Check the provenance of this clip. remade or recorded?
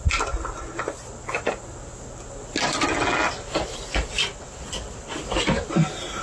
recorded